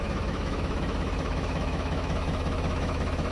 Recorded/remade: remade